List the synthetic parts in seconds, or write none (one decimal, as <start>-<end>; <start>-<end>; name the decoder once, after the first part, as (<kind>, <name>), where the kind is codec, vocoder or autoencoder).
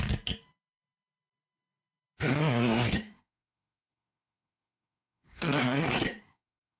2.4-6.8 (codec, SNAC)